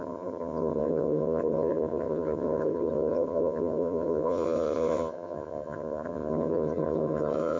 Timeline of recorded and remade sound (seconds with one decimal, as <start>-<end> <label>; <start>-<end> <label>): 0.0-7.6 remade